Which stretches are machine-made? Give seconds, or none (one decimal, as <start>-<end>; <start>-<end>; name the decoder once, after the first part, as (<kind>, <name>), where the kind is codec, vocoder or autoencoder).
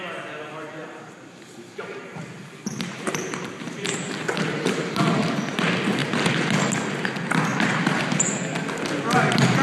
0.8-5.3 (vocoder, BigVGAN v2); 7.5-8.3